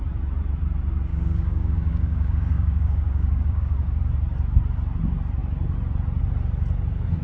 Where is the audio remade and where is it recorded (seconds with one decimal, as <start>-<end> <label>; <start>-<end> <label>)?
0.0-1.1 recorded; 1.1-4.0 remade; 4.0-7.2 recorded